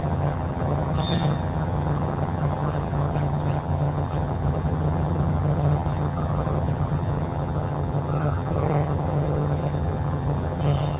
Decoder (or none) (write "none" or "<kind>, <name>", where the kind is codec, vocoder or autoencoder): vocoder, HiFi-GAN